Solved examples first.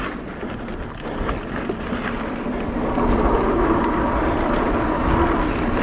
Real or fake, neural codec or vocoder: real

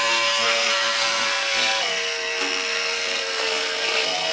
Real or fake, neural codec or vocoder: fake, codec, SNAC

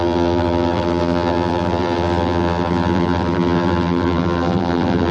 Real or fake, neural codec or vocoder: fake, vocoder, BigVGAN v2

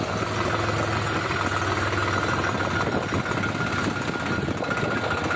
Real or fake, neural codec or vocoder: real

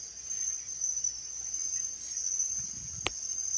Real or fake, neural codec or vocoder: real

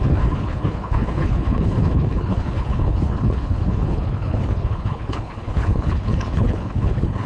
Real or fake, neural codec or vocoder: fake, codec, HILCodec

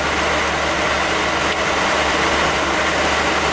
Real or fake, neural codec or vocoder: real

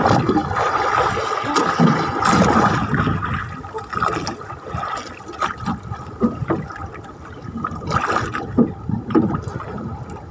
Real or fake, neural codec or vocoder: real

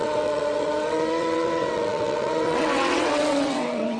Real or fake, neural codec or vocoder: fake, vocoder, WaveNeXt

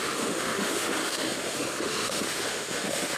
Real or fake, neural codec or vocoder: fake, autoencoder, DAC-VAE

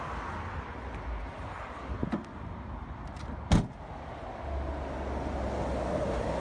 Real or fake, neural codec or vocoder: real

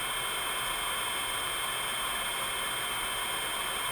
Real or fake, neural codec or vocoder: real